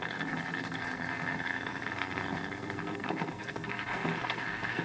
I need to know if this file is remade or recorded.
remade